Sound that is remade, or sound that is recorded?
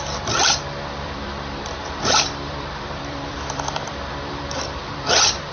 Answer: remade